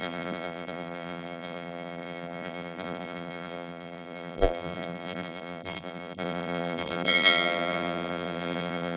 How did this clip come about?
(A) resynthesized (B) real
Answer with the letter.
A